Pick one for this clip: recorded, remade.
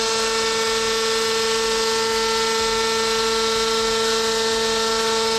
recorded